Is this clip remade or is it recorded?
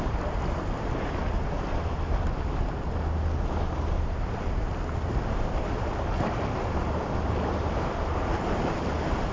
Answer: recorded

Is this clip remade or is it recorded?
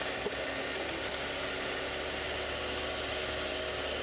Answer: recorded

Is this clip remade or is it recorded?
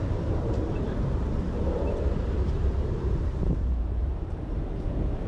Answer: remade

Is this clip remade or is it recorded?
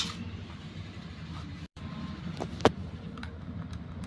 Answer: remade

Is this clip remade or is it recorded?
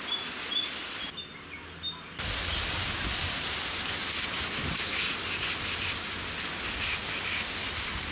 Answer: recorded